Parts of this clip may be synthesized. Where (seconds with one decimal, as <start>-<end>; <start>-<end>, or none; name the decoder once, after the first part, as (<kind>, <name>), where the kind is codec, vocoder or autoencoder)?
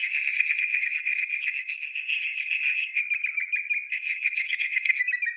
0.0-3.0 (codec, SNAC); 3.9-5.0